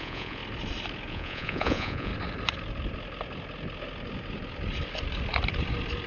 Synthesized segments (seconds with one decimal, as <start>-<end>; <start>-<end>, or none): 0.0-0.4; 1.1-2.1